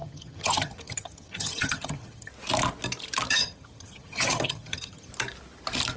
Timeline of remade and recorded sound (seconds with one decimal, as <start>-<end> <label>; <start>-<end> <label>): 0.0-2.3 remade; 2.3-3.3 recorded; 3.3-5.1 remade; 5.1-6.0 recorded